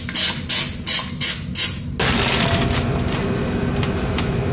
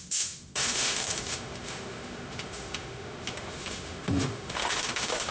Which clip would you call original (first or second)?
first